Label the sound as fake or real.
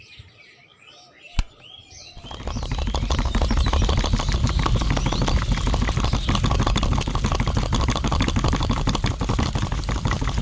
real